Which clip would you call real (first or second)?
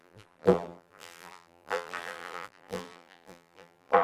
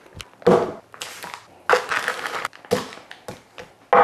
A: second